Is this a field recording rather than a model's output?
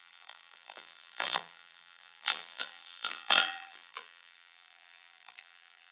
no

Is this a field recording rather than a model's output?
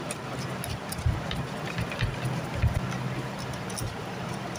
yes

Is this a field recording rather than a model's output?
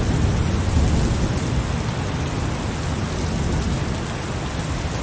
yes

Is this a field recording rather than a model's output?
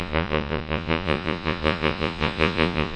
no